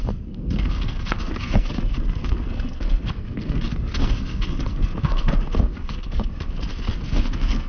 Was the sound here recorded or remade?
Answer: remade